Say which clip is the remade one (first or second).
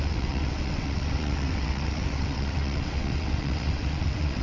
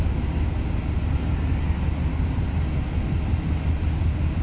first